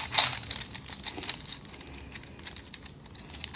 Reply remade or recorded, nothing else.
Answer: recorded